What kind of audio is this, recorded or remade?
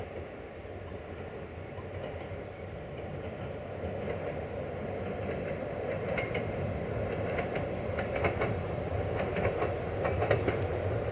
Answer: recorded